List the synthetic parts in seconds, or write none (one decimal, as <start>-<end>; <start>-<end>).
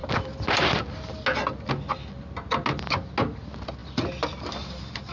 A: none